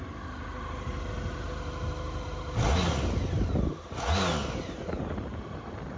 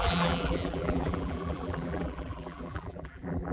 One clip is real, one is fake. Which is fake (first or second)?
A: second